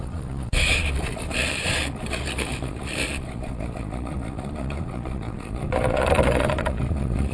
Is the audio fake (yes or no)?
yes